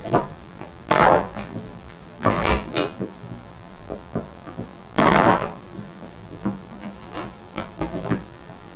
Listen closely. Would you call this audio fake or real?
fake